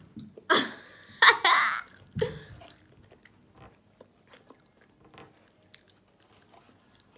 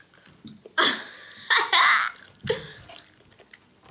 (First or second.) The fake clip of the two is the second